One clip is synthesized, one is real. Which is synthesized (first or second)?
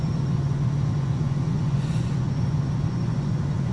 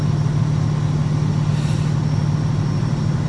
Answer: first